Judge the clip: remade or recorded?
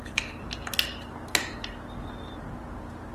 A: recorded